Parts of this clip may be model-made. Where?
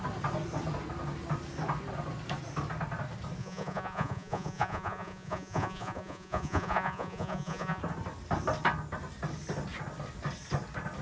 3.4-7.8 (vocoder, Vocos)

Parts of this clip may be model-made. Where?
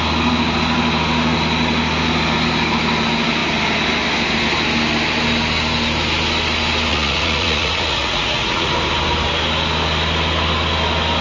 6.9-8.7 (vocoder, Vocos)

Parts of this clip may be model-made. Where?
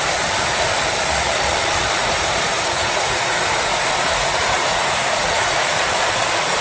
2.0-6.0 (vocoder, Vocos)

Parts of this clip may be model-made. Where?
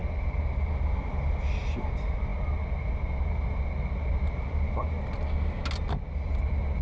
none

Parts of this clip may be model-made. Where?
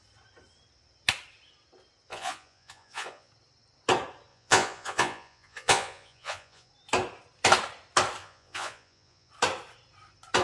2.1-3.3 (vocoder, Vocos); 4.3-6.7; 8.2-9.3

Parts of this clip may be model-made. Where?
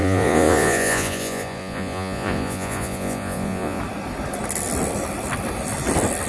0.0-3.8 (vocoder, Vocos)